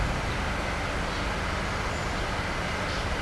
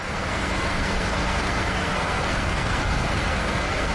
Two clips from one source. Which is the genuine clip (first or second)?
first